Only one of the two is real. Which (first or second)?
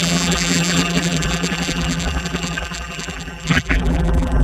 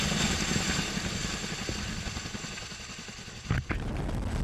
second